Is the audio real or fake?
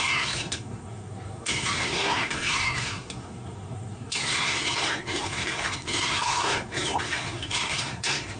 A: fake